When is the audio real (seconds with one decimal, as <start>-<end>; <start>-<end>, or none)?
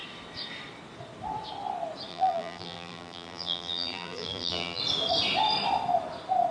0.0-2.1; 4.8-6.5